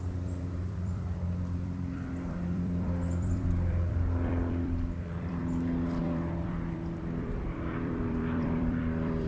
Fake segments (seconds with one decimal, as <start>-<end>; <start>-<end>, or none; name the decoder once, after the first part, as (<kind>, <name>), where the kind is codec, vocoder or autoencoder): 0.0-5.4 (vocoder, BigVGAN v2); 6.0-9.3